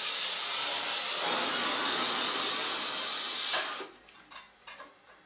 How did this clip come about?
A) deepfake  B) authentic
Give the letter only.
B